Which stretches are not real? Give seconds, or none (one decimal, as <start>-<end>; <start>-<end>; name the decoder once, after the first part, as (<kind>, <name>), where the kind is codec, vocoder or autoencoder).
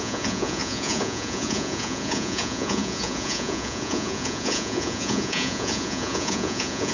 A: 0.0-6.9 (vocoder, Vocos)